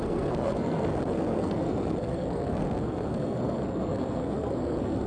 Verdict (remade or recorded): remade